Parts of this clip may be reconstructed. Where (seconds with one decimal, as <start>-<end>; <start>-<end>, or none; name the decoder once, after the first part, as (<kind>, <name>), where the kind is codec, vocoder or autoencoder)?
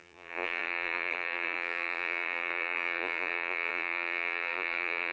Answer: 0.0-5.1 (vocoder, BigVGAN v2)